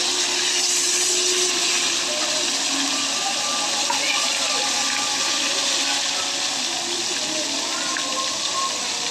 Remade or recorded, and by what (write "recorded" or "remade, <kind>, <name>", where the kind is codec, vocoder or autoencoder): recorded